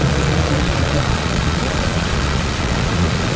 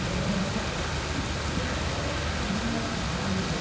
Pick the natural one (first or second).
second